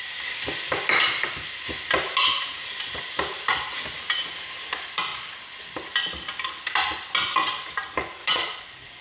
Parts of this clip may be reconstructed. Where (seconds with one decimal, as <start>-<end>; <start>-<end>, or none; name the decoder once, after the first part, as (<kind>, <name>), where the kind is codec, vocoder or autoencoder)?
5.1-5.6 (vocoder, Vocos); 8.2-9.0

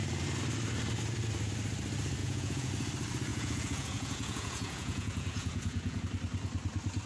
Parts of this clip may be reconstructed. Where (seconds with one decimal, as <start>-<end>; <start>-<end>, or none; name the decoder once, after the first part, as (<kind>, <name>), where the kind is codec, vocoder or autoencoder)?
2.2-2.7 (vocoder, Vocos); 3.3-6.0

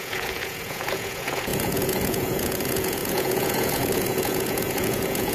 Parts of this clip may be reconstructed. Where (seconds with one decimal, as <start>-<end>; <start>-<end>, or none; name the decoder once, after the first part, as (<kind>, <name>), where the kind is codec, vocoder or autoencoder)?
0.0-5.3 (vocoder, Vocos)

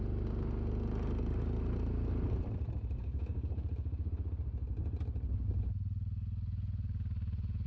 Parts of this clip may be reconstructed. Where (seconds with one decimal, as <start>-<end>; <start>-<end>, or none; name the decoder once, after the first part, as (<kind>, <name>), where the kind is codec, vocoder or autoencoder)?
3.0-3.5 (codec, DAC)

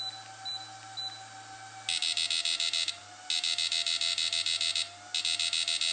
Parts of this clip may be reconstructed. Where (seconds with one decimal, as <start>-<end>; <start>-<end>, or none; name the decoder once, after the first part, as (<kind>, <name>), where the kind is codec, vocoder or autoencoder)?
none

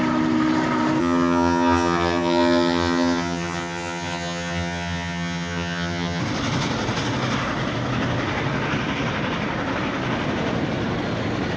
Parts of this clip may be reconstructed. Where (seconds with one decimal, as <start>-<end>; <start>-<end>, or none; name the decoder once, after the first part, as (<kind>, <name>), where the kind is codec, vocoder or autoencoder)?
1.0-6.2 (vocoder, HiFi-GAN)

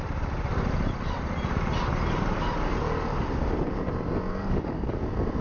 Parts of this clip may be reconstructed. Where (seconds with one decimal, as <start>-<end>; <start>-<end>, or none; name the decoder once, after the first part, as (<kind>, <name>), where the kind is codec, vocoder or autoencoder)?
4.3-5.0 (codec, DAC)

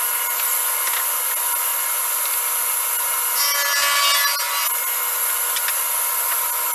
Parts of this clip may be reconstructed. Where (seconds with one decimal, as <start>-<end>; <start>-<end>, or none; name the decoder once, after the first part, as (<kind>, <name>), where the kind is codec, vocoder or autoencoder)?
none